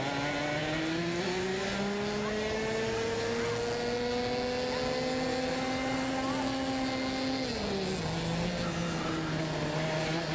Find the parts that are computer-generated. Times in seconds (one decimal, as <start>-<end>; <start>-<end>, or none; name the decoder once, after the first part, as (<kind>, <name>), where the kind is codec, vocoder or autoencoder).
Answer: none